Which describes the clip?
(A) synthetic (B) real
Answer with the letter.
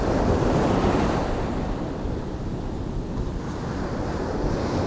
B